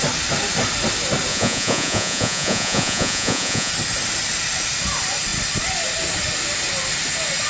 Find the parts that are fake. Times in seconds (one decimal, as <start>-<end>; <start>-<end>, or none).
1.3-3.7